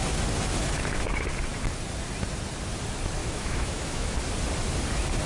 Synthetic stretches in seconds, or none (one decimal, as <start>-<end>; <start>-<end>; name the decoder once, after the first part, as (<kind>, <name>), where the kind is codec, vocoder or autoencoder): 3.2-4.2 (autoencoder, DAC-VAE)